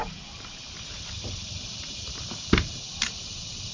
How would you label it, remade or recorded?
remade